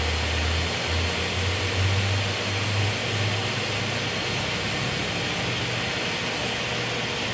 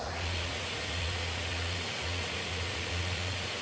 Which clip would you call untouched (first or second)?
first